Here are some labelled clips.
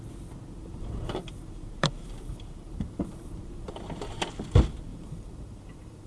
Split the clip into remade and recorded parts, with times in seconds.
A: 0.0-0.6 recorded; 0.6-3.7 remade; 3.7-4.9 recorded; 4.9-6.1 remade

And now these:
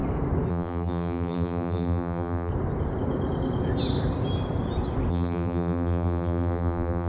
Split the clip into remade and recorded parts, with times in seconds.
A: 0.0-0.5 recorded; 0.5-2.5 remade; 2.5-5.1 recorded; 5.1-7.1 remade

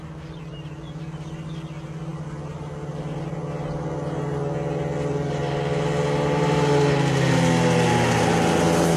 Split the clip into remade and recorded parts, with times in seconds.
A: 0.0-9.0 recorded

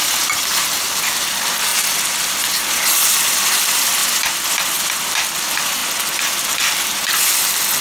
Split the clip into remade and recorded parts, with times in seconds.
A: 0.0-0.6 remade; 0.6-1.2 recorded; 1.2-1.7 remade; 1.7-3.3 recorded; 3.3-7.8 remade

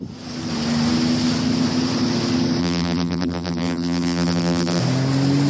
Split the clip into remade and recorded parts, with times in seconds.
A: 0.0-2.6 recorded; 2.6-4.8 remade; 4.8-5.5 recorded

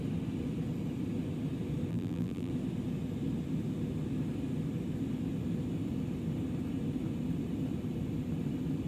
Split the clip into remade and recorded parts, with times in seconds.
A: 0.0-1.9 recorded; 1.9-2.5 remade; 2.5-8.9 recorded

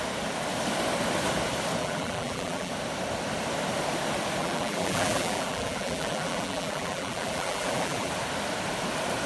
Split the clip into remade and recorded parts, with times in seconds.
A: 0.0-1.8 recorded; 1.8-2.7 remade; 2.7-4.4 recorded; 4.4-8.1 remade; 8.1-9.3 recorded

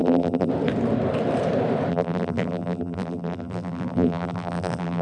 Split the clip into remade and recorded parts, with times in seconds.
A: 0.0-0.5 remade; 0.5-1.9 recorded; 1.9-5.0 remade